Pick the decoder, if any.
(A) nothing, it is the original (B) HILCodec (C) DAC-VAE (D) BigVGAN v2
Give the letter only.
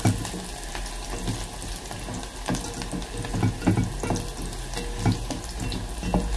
A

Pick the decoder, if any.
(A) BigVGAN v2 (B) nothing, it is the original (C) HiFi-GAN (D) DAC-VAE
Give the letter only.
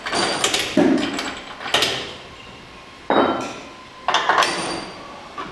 B